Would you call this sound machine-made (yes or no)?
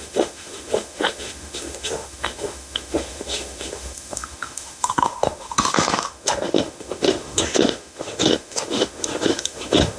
yes